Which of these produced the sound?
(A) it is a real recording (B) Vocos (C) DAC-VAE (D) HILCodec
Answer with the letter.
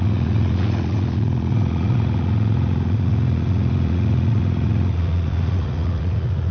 B